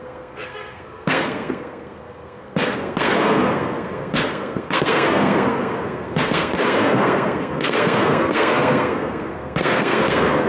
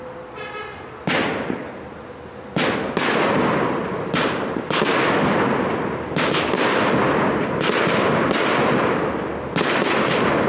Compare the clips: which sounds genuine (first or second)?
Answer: second